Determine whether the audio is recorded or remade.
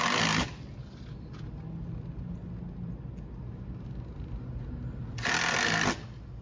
recorded